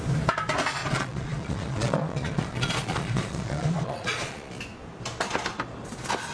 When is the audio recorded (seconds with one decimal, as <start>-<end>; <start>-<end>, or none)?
0.0-0.8; 4.6-6.3